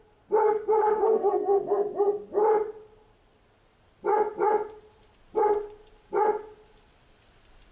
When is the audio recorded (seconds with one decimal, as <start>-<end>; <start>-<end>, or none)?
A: 0.0-0.4; 1.6-7.7